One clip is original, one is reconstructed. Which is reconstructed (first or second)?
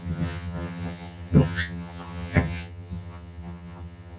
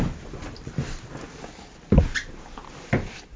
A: first